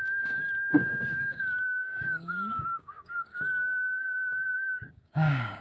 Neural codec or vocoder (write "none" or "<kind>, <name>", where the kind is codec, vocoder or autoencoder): codec, DAC